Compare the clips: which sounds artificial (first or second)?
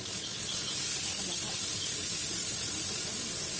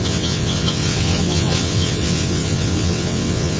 second